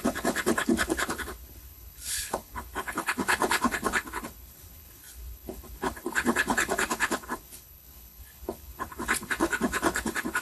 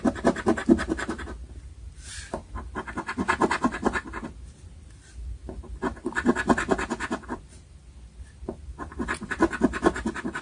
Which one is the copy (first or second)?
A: first